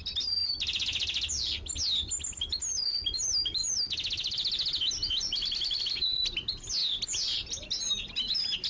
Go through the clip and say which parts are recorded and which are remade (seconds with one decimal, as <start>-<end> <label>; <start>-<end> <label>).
0.0-8.7 recorded